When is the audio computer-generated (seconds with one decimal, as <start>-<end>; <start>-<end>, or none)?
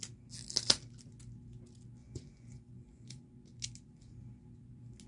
2.0-3.4